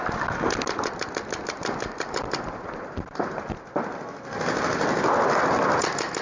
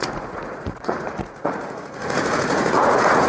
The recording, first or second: first